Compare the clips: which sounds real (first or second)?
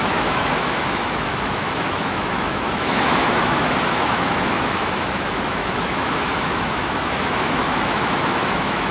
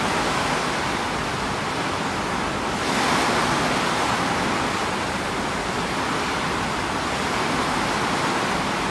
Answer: second